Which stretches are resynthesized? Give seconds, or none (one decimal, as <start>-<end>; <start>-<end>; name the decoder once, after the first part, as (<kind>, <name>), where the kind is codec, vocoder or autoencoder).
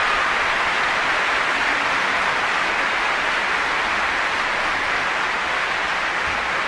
none